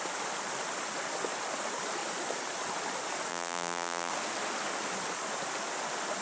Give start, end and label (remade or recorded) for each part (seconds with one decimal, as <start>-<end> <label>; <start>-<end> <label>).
0.0-3.3 recorded; 3.3-4.1 remade; 4.1-6.2 recorded